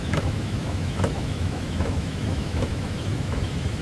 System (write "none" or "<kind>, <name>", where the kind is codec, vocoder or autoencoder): autoencoder, DAC-VAE